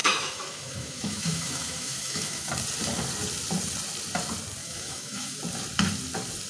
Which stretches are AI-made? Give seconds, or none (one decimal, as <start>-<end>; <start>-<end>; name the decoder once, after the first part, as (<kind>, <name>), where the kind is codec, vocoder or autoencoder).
0.0-2.5 (autoencoder, DAC-VAE); 4.6-5.4